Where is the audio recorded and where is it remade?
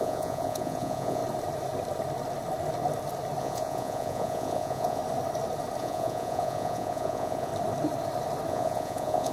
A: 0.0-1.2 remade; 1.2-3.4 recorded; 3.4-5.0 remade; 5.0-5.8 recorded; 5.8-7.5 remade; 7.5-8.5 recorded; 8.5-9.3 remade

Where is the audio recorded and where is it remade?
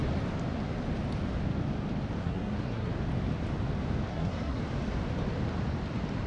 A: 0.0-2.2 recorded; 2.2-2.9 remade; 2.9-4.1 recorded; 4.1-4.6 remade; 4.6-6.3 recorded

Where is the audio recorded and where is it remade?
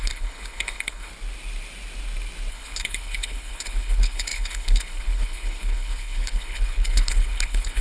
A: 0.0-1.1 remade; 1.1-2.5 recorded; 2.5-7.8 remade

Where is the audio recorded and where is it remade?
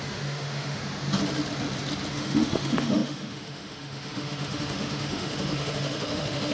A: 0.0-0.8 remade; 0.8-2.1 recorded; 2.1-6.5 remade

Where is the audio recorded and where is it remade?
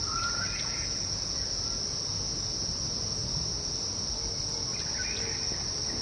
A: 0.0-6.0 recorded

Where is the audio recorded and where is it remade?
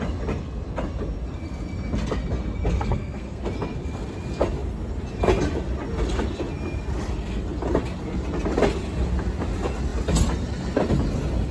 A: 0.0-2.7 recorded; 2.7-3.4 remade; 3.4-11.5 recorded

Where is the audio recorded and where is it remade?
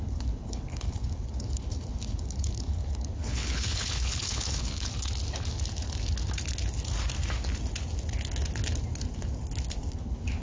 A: 0.0-4.9 remade; 4.9-9.9 recorded; 9.9-10.4 remade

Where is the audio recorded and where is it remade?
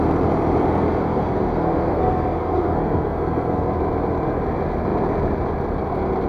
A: 0.0-1.0 recorded; 1.0-3.7 remade; 3.7-6.3 recorded